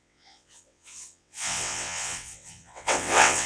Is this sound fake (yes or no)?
yes